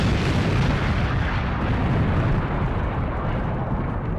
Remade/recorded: recorded